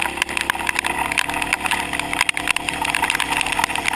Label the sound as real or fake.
real